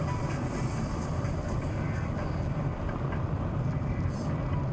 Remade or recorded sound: recorded